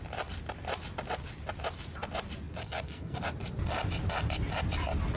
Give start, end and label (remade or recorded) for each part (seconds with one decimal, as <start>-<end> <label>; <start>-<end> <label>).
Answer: 0.0-2.6 recorded; 2.6-3.2 remade; 3.2-5.2 recorded